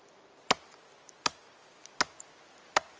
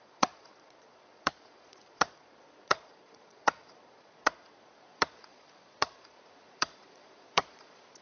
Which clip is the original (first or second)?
first